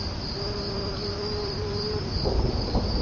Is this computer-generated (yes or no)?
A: yes